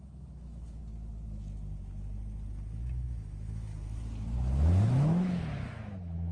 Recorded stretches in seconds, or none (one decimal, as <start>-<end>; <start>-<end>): 0.8-2.8; 3.7-4.8